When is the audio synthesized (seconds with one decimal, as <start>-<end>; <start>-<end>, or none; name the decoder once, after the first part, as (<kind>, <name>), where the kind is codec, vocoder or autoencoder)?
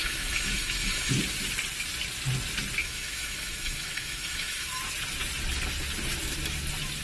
0.0-1.1 (autoencoder, DAC-VAE); 2.8-4.8